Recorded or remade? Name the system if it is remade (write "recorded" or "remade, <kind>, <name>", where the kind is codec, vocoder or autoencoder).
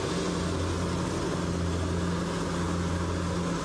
recorded